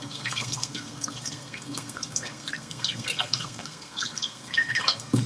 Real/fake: fake